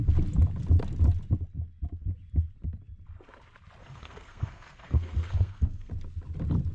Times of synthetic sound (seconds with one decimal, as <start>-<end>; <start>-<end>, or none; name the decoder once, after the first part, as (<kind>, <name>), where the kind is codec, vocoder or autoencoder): 3.8-5.9 (codec, SNAC)